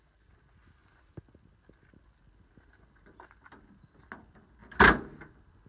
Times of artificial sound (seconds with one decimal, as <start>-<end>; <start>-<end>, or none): none